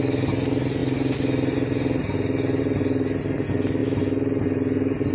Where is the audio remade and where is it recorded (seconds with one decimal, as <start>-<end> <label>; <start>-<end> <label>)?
0.0-5.1 recorded